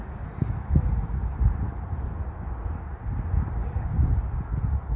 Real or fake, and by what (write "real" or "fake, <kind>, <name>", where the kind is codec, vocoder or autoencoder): real